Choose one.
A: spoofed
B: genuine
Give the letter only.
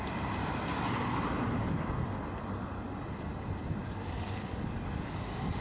B